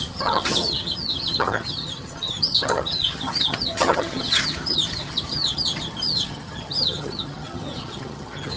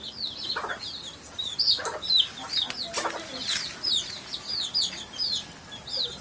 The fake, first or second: first